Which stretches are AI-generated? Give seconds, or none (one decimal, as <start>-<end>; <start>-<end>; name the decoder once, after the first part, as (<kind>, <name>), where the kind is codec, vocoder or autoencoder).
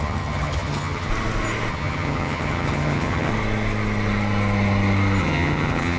0.0-1.1 (vocoder, HiFi-GAN); 1.7-3.3; 5.2-6.0